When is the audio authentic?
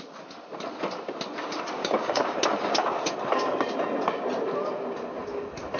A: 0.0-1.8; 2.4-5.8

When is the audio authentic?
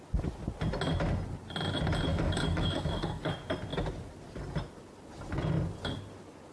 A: 0.0-2.1; 3.3-6.5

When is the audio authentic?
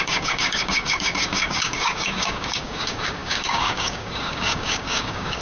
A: none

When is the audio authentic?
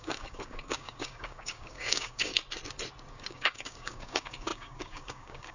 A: 2.3-3.1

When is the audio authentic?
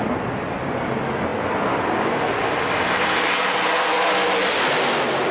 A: 0.0-5.3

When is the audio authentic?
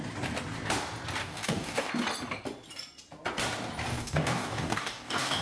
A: 0.0-1.2; 1.9-3.9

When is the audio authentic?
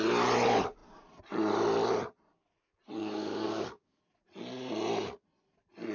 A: 0.0-3.0; 4.0-5.9